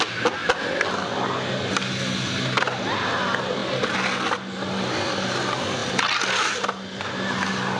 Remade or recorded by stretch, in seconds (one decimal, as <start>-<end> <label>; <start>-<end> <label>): 0.0-7.8 recorded